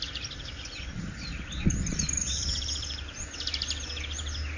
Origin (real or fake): real